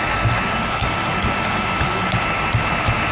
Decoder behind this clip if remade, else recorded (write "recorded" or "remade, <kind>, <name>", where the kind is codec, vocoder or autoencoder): recorded